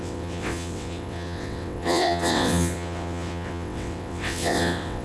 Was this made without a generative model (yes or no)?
no